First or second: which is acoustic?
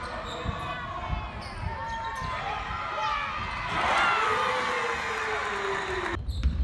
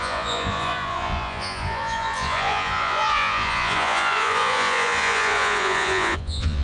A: first